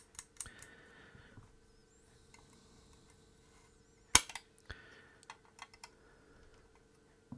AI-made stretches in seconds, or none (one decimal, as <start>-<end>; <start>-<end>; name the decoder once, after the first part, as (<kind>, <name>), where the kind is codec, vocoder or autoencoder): none